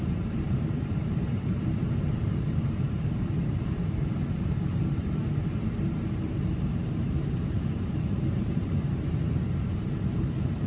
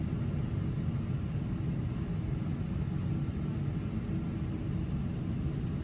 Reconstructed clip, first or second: first